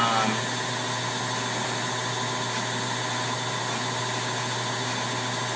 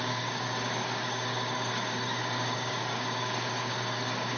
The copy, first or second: second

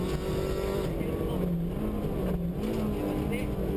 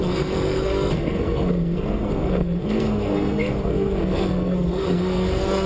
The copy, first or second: second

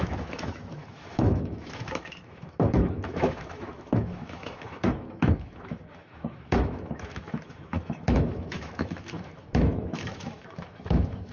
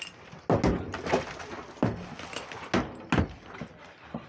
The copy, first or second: first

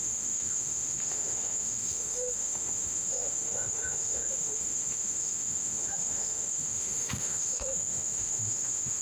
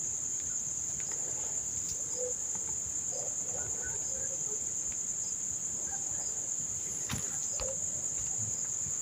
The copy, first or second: first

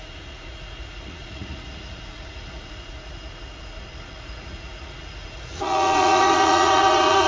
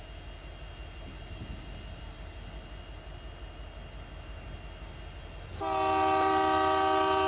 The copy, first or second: first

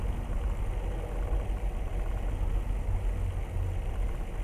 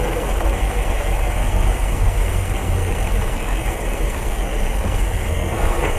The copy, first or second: second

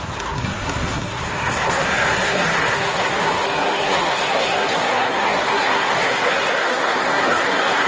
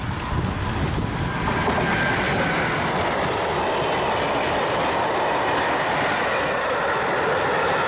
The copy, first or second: first